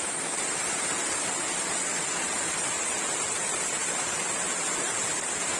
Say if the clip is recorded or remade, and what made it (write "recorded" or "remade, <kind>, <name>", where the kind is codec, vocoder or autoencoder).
remade, vocoder, BigVGAN v2